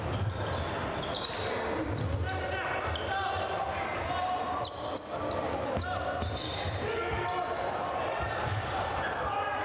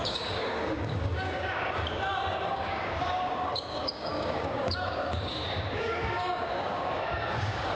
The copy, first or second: second